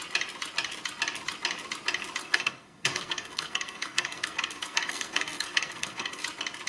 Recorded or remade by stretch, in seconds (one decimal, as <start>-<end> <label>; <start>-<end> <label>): 0.0-2.2 recorded; 2.2-6.2 remade; 6.2-6.7 recorded